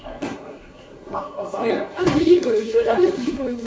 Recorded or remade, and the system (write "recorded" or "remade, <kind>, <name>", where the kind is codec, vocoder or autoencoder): remade, codec, SNAC